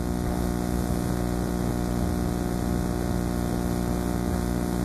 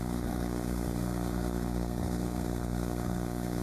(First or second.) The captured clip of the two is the first